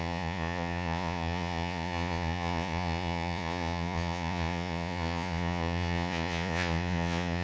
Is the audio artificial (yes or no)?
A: yes